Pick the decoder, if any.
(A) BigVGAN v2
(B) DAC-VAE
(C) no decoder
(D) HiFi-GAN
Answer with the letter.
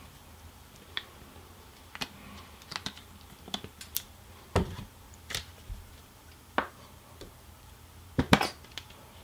A